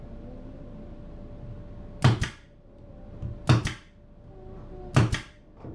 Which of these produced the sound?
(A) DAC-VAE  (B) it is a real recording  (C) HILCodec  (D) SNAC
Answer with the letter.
B